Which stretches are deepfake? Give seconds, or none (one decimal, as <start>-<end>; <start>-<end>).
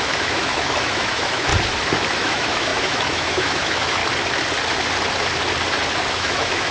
0.0-1.5; 2.1-4.0; 6.1-6.7